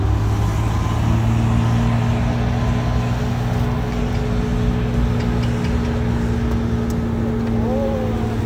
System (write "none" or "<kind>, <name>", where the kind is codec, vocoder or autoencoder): none